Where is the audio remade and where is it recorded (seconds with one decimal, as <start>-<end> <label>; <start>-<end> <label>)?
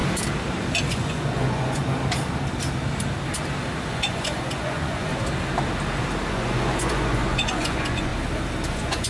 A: 0.0-0.9 recorded; 0.9-1.8 remade; 1.8-3.9 recorded; 3.9-5.1 remade; 5.1-6.3 recorded; 6.3-8.1 remade; 8.1-8.7 recorded; 8.7-9.1 remade